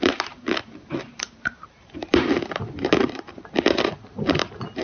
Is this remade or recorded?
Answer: remade